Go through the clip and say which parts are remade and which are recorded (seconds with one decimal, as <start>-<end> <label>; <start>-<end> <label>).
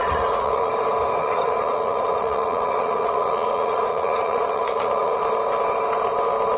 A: 0.0-0.7 remade; 0.7-1.2 recorded; 1.2-5.2 remade; 5.2-6.6 recorded